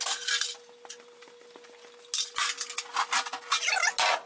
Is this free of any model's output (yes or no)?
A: yes